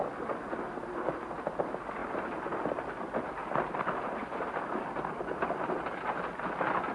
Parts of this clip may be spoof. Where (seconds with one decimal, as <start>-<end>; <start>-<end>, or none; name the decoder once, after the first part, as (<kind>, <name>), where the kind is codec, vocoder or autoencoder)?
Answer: none

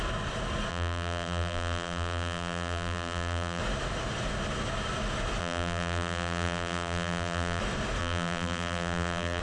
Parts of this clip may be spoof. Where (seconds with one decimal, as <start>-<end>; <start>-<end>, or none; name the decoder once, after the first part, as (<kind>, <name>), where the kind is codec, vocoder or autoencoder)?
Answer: 0.7-3.6 (vocoder, BigVGAN v2); 5.4-7.6; 8.0-9.4

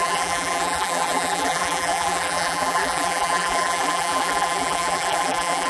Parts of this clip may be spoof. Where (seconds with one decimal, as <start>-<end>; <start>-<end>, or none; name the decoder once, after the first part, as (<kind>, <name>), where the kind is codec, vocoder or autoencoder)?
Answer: 0.0-5.7 (vocoder, BigVGAN v2)